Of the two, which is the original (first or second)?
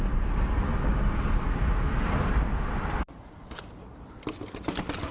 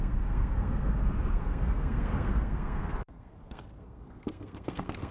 first